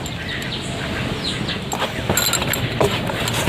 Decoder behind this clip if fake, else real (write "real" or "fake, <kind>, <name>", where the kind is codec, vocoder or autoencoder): real